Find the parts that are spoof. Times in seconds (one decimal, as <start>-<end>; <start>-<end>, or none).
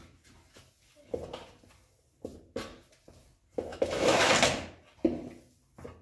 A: 3.7-4.3